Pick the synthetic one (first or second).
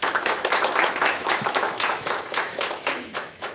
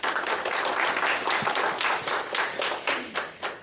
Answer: first